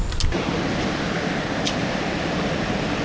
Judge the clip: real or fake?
real